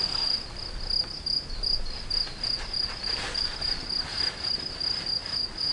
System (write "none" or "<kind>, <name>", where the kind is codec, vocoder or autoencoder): none